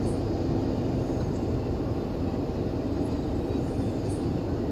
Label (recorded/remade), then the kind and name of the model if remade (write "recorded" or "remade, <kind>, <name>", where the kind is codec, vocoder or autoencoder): recorded